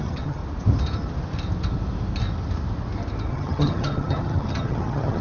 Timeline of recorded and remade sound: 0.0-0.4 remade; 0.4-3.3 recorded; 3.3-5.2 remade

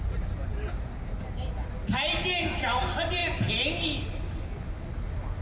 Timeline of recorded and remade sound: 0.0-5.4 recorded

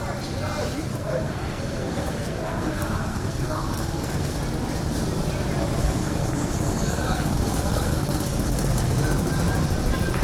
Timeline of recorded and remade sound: 0.0-0.9 recorded; 0.9-4.4 remade; 4.4-5.8 recorded; 5.8-9.3 remade; 9.3-10.2 recorded

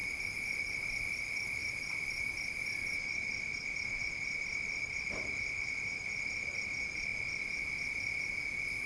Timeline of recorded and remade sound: 0.0-1.6 recorded; 1.6-5.1 remade; 5.1-8.9 recorded

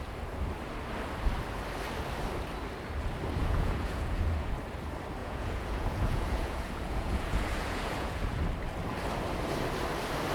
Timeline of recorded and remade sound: 0.0-3.4 recorded; 3.4-4.5 remade; 4.5-5.2 recorded; 5.2-8.4 remade; 8.4-10.3 recorded

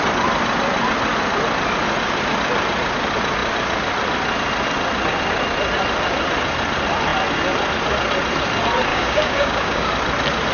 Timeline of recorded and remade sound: 0.0-8.9 recorded; 8.9-9.9 remade; 9.9-10.5 recorded

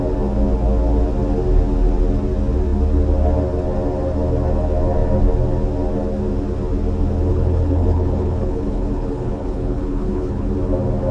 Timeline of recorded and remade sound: 0.0-7.3 recorded; 7.3-10.5 remade; 10.5-11.1 recorded